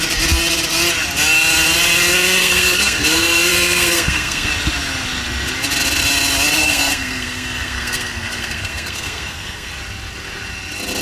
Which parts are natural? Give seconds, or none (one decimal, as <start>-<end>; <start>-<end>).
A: 0.0-2.4; 4.5-6.5; 9.7-11.0